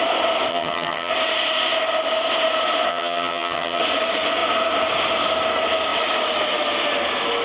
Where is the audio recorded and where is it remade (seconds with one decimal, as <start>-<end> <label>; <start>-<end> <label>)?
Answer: 0.0-0.5 recorded; 0.5-1.1 remade; 1.1-2.9 recorded; 2.9-3.8 remade; 3.8-7.4 recorded